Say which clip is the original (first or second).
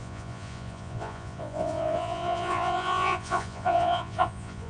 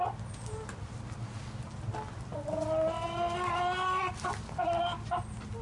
second